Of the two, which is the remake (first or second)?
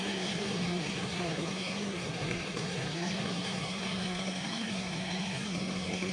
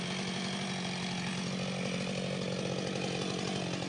first